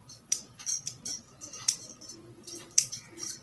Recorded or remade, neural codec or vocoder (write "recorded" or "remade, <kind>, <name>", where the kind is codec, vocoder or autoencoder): remade, vocoder, Vocos